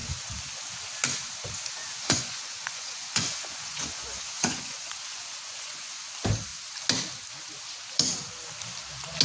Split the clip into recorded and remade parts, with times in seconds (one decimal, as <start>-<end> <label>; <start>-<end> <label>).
0.0-1.8 recorded; 1.8-6.1 remade; 6.1-9.2 recorded